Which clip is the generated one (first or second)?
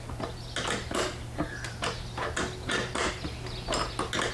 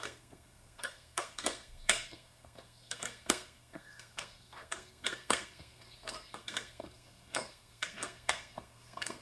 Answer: second